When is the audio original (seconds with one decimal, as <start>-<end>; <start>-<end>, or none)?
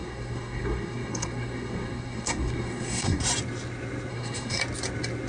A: 3.2-4.1; 4.6-5.3